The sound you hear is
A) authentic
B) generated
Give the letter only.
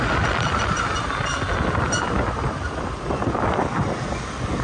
A